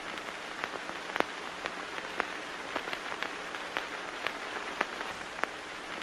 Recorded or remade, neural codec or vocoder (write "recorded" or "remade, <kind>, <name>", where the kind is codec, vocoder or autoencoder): recorded